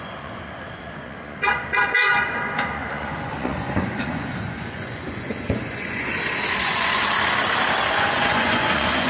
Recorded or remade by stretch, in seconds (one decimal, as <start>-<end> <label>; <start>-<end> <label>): 0.0-6.1 remade; 6.1-6.6 recorded; 6.6-7.0 remade; 7.0-7.9 recorded; 7.9-9.1 remade